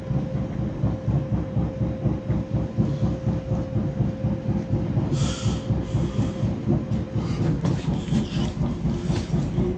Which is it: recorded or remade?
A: recorded